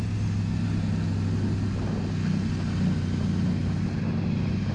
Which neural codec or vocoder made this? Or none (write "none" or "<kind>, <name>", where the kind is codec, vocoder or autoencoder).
none